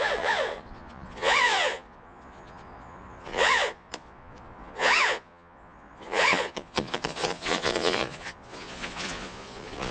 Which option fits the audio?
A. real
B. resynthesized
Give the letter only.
B